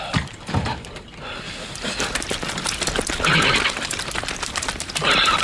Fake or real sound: fake